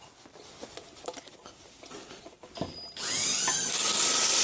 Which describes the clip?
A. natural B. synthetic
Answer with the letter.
A